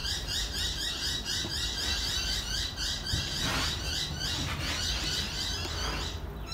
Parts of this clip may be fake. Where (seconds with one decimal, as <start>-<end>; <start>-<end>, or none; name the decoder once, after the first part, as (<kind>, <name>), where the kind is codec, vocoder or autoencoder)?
none